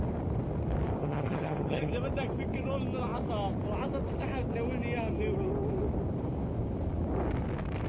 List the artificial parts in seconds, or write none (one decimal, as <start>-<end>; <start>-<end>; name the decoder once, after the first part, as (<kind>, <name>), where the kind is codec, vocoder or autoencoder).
1.0-1.9 (vocoder, HiFi-GAN)